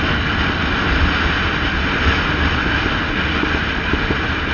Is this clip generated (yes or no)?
no